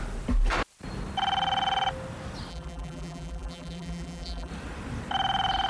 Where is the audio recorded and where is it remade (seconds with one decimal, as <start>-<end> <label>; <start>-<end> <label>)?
0.0-2.5 recorded; 2.5-4.5 remade; 4.5-5.7 recorded

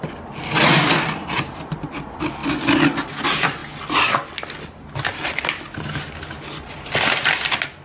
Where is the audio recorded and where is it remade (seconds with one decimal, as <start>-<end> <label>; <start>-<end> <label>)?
0.0-7.8 recorded

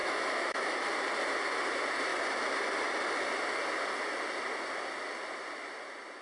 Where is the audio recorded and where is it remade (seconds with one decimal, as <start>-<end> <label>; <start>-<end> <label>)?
0.0-0.8 remade; 0.8-6.2 recorded

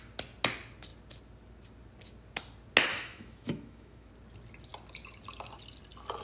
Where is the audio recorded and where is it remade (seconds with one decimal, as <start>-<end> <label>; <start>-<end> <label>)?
0.0-2.9 recorded; 2.9-4.1 remade; 4.1-6.2 recorded

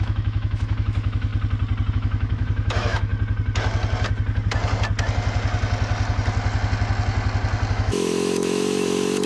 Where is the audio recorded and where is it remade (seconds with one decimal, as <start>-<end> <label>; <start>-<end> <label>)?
0.0-1.3 remade; 1.3-1.9 recorded; 1.9-3.1 remade; 3.1-7.7 recorded; 7.7-9.3 remade

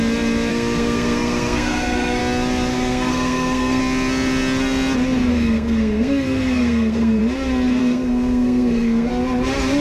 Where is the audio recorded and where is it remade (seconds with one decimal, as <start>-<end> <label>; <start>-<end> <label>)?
0.0-0.5 recorded; 0.5-2.2 remade; 2.2-2.7 recorded; 2.7-3.8 remade; 3.8-5.3 recorded; 5.3-7.2 remade; 7.2-7.8 recorded; 7.8-9.1 remade; 9.1-9.8 recorded